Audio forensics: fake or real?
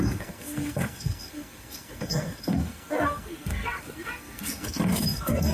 fake